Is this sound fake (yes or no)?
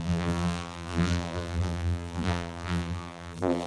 yes